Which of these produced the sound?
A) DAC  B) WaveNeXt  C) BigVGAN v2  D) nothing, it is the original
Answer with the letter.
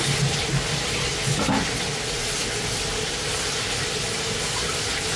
D